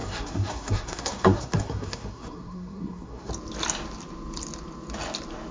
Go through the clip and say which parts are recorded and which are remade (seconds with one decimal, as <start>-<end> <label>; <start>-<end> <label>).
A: 0.0-3.3 remade; 3.3-5.5 recorded

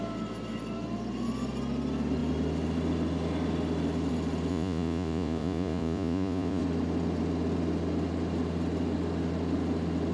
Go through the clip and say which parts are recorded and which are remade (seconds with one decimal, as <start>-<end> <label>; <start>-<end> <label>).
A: 0.0-4.5 recorded; 4.5-6.6 remade; 6.6-10.1 recorded